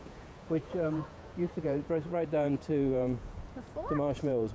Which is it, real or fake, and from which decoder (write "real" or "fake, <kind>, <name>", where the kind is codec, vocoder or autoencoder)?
fake, vocoder, Vocos